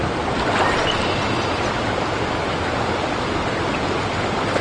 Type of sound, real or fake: real